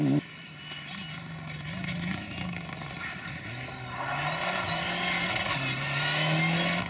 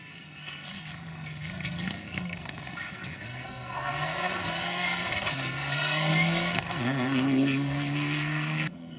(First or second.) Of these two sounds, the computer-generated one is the second